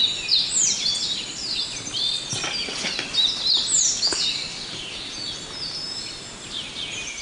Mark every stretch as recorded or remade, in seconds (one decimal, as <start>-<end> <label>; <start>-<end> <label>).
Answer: 0.0-7.2 recorded